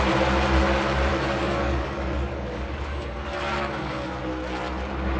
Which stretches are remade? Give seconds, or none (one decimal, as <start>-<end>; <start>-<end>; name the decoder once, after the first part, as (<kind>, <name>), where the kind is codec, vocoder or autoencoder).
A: 1.1-4.2 (codec, DAC)